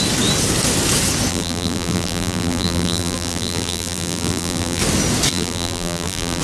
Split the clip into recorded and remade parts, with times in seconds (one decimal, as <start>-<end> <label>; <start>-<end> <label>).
0.0-1.3 recorded; 1.3-4.8 remade; 4.8-5.3 recorded; 5.3-6.4 remade